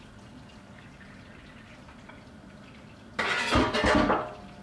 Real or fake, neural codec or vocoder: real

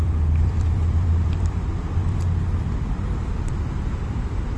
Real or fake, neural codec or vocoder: fake, vocoder, BigVGAN v2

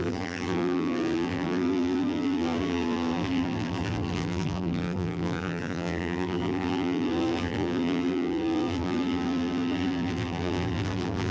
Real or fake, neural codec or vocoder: fake, vocoder, BigVGAN v2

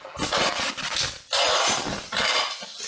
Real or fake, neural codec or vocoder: fake, vocoder, BigVGAN v2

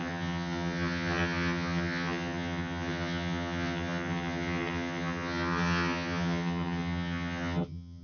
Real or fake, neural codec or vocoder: fake, vocoder, HiFi-GAN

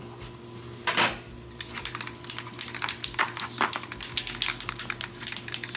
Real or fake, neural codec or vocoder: real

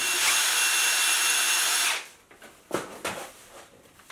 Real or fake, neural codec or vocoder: real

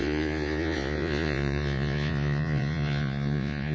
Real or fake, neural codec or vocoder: fake, vocoder, Vocos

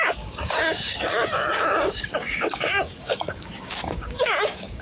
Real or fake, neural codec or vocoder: fake, codec, DAC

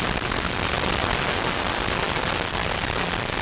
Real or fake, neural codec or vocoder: real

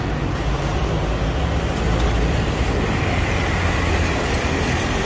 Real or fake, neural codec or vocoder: real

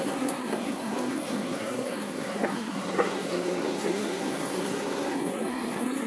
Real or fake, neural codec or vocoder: fake, codec, SNAC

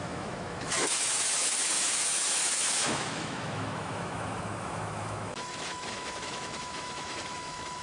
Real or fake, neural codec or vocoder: fake, autoencoder, DAC-VAE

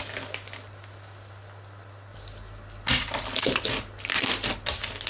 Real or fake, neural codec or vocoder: real